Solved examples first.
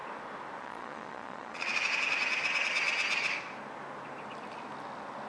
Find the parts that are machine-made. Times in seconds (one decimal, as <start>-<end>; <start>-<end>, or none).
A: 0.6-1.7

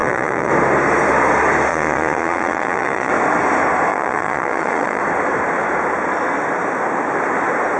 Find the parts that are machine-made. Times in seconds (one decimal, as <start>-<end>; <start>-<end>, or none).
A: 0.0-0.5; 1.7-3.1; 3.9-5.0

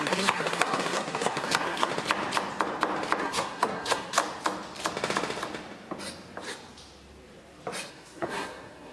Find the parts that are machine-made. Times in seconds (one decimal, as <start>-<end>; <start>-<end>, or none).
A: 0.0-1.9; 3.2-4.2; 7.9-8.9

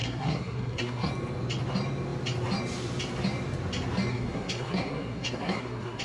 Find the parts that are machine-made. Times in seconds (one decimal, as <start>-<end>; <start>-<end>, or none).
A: 0.0-1.1; 4.1-6.0

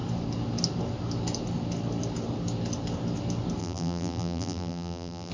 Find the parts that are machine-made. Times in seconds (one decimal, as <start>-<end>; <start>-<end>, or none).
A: 3.6-5.3